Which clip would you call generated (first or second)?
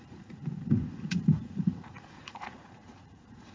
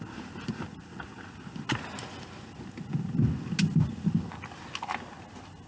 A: first